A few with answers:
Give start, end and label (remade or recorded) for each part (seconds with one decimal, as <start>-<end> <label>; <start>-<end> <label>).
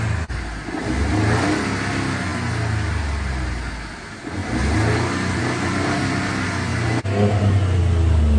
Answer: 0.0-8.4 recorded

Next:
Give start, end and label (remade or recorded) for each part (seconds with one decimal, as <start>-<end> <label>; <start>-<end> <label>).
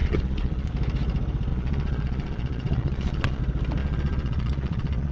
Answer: 0.0-0.7 remade; 0.7-1.5 recorded; 1.5-3.4 remade; 3.4-3.8 recorded; 3.8-5.1 remade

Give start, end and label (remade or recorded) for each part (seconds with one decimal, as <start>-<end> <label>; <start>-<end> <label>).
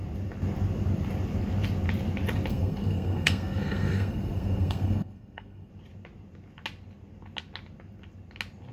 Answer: 0.0-2.5 recorded; 2.5-5.7 remade; 5.7-8.7 recorded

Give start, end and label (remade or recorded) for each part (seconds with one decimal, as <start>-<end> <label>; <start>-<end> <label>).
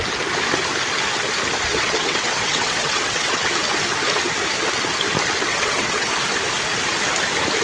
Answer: 0.0-1.7 recorded; 1.7-3.5 remade; 3.5-5.5 recorded; 5.5-6.1 remade; 6.1-7.6 recorded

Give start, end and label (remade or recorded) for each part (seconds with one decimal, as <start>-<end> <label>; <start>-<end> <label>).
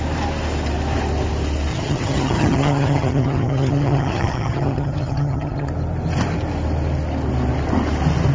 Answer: 0.0-1.7 recorded; 1.7-5.7 remade; 5.7-8.3 recorded